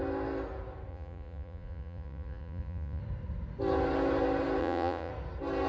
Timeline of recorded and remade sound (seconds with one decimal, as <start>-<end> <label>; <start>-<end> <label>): 0.0-0.9 recorded; 0.9-3.0 remade; 3.0-4.6 recorded; 4.6-5.1 remade; 5.1-5.7 recorded